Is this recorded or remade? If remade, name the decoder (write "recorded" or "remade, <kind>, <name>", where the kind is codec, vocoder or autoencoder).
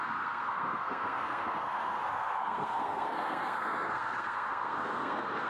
remade, codec, SNAC